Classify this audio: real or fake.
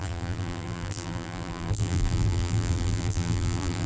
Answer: fake